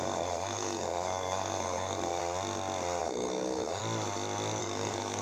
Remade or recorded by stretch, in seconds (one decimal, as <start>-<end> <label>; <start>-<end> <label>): 0.0-2.2 remade; 2.2-3.0 recorded; 3.0-3.8 remade; 3.8-4.6 recorded; 4.6-5.2 remade